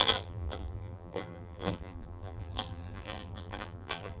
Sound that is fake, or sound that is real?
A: fake